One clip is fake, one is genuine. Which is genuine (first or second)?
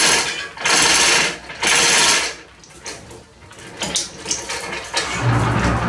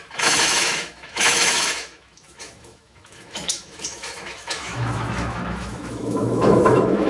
first